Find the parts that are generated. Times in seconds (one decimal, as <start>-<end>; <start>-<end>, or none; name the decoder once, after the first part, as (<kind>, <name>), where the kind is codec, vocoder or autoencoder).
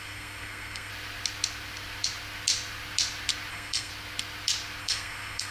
0.0-0.9 (codec, SNAC); 3.5-3.9; 4.8-5.5